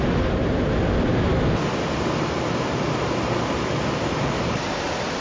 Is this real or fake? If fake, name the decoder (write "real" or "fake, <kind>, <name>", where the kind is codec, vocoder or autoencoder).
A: real